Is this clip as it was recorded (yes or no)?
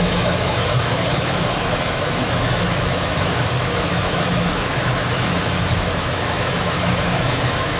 no